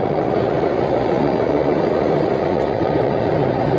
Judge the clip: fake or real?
fake